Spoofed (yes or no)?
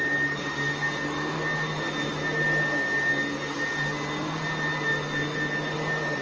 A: no